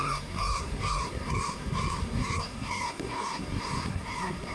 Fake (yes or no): yes